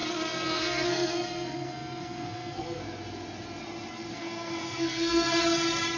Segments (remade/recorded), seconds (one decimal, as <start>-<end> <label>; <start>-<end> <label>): 0.0-2.8 remade; 2.8-4.1 recorded; 4.1-5.4 remade; 5.4-6.0 recorded